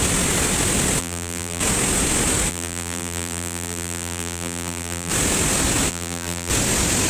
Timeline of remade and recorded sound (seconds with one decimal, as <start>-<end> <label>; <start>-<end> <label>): 0.0-1.0 recorded; 1.0-1.6 remade; 1.6-2.5 recorded; 2.5-5.1 remade; 5.1-5.9 recorded; 5.9-6.5 remade; 6.5-7.1 recorded